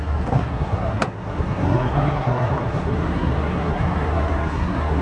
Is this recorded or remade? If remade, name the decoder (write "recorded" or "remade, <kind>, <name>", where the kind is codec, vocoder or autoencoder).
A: remade, codec, SNAC